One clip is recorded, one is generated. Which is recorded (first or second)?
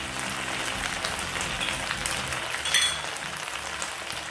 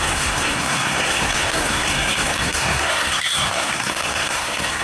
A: first